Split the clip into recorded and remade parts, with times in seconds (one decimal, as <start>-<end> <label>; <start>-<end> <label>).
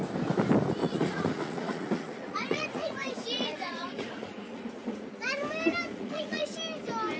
0.0-0.8 recorded; 0.8-5.1 remade; 5.1-5.9 recorded; 5.9-6.6 remade; 6.6-7.2 recorded